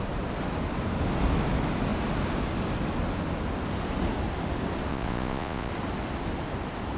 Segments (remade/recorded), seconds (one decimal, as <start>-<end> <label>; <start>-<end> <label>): 0.0-4.9 recorded; 4.9-5.7 remade; 5.7-7.0 recorded